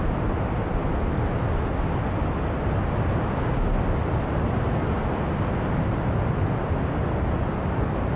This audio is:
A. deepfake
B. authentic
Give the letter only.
B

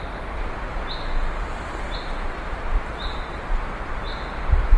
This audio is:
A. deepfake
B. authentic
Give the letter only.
B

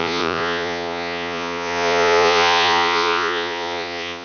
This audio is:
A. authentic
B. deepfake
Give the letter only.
B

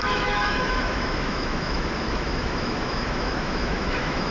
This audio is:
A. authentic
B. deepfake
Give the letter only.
B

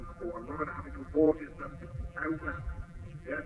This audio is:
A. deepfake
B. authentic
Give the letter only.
A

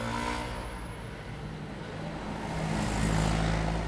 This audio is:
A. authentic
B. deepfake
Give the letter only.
A